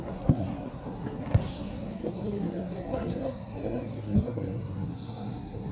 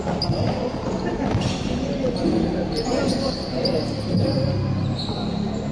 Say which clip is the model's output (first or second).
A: first